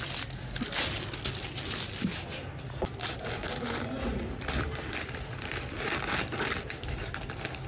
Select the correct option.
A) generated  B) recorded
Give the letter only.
B